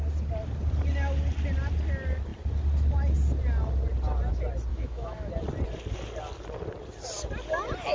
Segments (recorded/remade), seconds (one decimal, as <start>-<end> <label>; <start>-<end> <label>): 0.0-4.7 recorded; 4.7-5.3 remade; 5.3-7.9 recorded